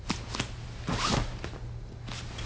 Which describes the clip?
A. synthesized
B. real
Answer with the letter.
B